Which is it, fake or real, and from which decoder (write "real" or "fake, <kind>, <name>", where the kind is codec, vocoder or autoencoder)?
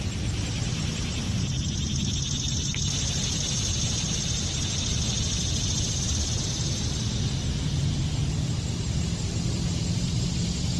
real